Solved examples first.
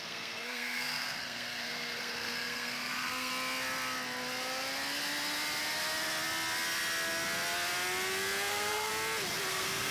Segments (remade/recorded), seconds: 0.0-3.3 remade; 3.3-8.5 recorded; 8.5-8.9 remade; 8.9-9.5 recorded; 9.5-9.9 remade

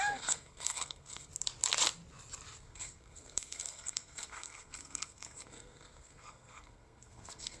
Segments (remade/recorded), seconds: 0.0-1.3 remade; 1.3-2.6 recorded; 2.6-7.6 remade